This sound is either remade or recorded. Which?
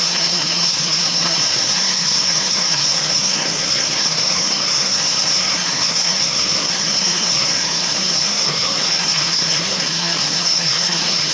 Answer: remade